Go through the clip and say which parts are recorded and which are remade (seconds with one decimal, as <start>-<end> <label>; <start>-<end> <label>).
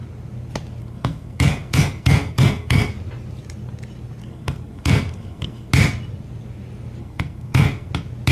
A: 0.0-0.8 recorded; 0.8-2.9 remade; 2.9-4.2 recorded; 4.2-5.7 remade; 5.7-7.0 recorded; 7.0-7.9 remade; 7.9-8.3 recorded